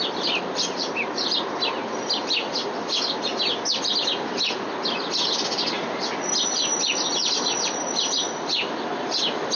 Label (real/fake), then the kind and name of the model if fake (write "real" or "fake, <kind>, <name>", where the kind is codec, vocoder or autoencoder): real